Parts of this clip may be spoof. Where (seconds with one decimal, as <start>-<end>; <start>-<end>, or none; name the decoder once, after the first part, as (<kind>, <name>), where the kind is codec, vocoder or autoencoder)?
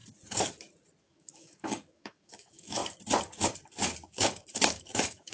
1.0-2.8 (autoencoder, DAC-VAE); 4.1-5.3